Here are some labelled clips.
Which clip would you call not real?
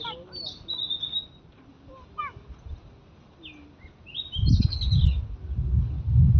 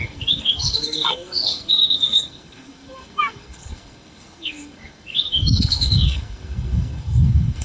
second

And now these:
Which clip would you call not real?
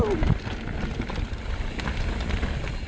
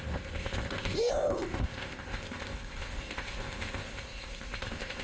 second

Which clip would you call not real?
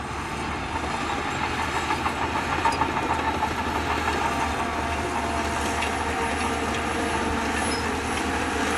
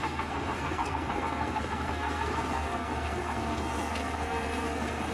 second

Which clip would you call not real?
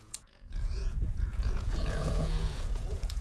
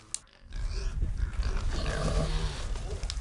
first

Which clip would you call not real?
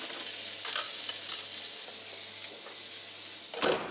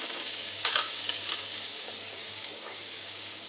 second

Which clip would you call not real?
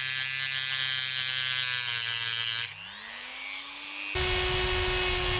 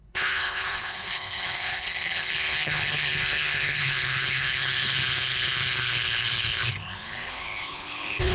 second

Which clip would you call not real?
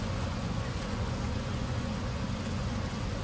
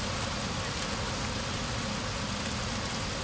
first